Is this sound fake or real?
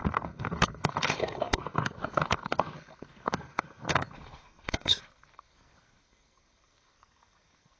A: fake